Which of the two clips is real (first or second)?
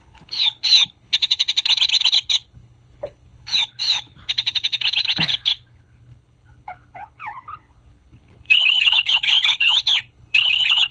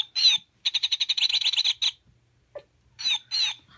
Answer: second